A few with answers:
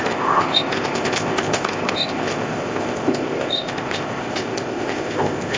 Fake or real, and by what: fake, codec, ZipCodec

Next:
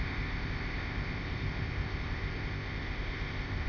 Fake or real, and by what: fake, codec, ZipCodec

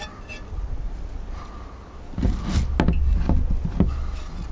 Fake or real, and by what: real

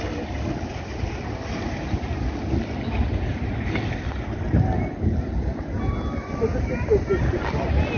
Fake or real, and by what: real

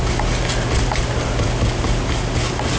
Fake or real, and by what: real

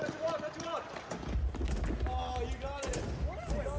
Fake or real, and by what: real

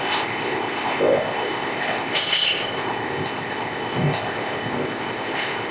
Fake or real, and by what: fake, codec, ZipCodec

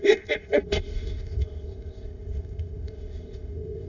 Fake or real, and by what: fake, codec, ZipCodec